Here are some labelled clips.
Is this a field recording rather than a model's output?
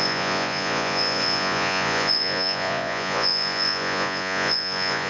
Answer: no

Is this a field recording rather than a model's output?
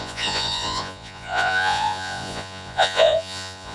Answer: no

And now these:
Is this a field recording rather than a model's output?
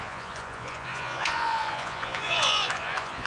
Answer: no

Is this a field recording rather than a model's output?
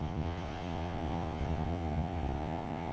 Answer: no